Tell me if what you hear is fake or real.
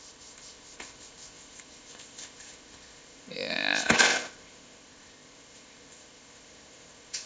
fake